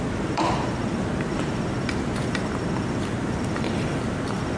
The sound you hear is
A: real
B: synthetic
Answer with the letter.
A